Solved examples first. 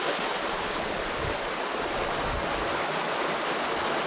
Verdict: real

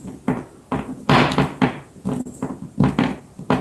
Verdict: real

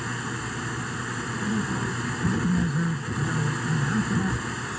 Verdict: real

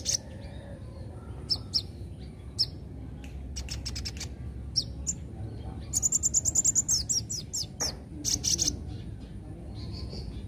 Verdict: real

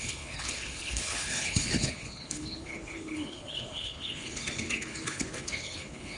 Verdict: fake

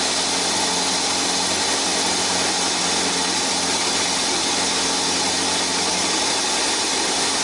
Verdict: real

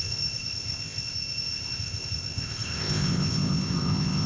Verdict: fake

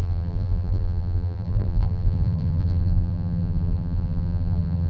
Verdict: fake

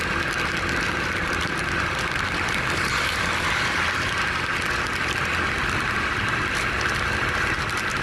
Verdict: real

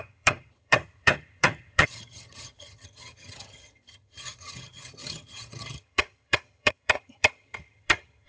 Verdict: fake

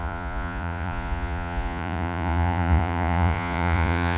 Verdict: fake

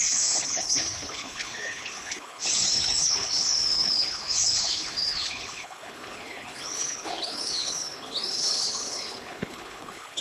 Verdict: fake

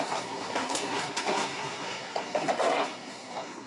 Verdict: fake